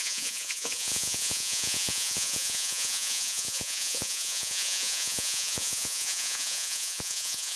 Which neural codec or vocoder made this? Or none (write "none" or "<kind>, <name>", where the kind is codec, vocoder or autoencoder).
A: vocoder, Vocos